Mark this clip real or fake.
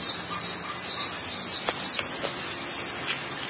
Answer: real